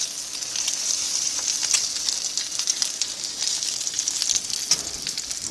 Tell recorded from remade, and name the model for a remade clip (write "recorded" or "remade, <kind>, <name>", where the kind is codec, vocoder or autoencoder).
recorded